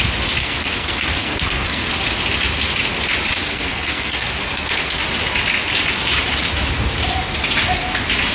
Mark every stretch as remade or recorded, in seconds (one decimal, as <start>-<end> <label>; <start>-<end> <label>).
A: 0.0-0.4 recorded; 0.4-1.9 remade; 1.9-3.4 recorded; 3.4-5.0 remade; 5.0-8.3 recorded